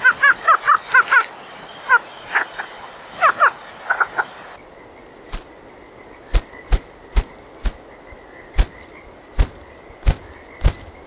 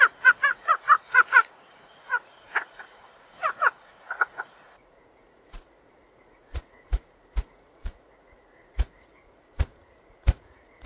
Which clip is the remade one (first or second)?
second